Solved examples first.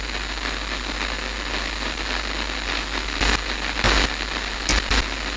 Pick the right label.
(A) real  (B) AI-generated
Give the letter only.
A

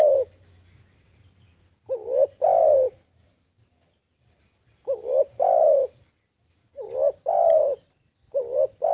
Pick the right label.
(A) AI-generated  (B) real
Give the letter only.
B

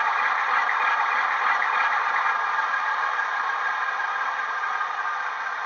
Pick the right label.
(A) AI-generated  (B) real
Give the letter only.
B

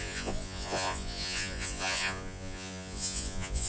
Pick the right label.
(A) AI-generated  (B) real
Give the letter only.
A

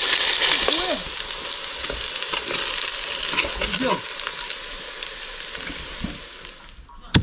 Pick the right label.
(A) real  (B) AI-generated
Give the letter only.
A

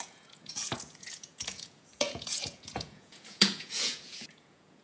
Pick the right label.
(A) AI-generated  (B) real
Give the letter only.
A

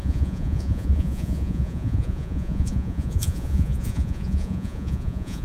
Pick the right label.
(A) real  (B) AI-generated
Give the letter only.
B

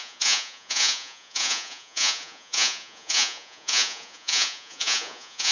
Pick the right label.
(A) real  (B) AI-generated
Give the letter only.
B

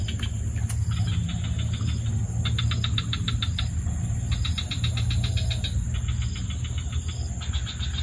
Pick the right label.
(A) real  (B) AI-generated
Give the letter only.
A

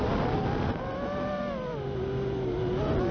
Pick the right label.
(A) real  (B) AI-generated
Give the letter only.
A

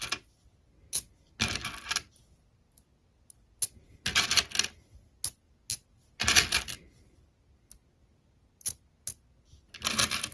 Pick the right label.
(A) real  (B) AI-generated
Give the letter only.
A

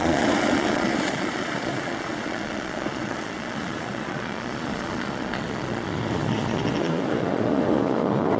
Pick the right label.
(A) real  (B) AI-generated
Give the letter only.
B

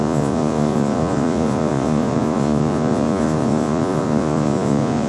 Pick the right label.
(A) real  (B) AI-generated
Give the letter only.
B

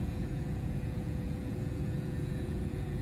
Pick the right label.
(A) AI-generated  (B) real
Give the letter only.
A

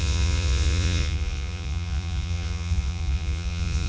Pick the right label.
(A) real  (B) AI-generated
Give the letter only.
B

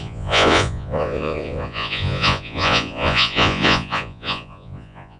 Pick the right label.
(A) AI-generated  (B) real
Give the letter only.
A